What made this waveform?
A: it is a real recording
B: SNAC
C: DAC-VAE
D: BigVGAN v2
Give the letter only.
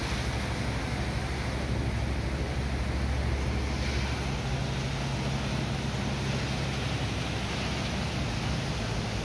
A